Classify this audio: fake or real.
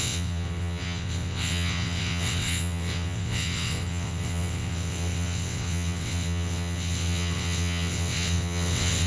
fake